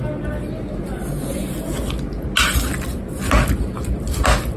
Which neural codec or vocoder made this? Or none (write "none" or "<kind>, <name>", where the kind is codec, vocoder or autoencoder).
none